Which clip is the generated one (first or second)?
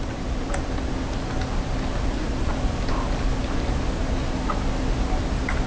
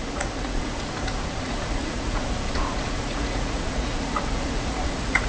second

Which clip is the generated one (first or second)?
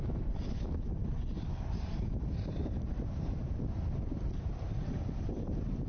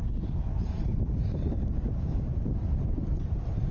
first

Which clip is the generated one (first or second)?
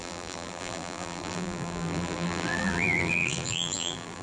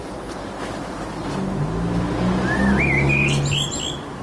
first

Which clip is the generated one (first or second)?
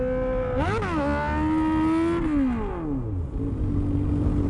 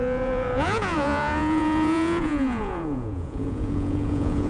second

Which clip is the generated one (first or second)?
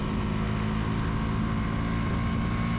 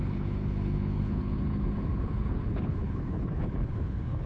second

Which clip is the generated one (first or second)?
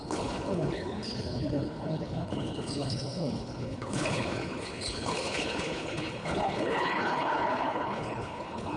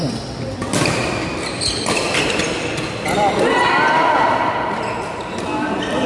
first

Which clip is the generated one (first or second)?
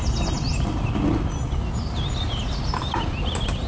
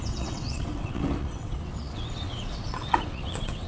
second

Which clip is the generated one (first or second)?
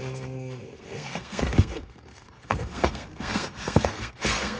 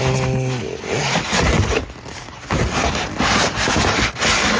first